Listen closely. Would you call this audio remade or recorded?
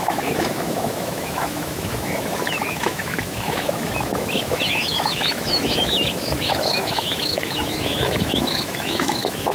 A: remade